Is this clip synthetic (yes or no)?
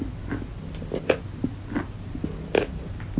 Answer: no